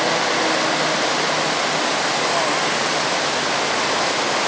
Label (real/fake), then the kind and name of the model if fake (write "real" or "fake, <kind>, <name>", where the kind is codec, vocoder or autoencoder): real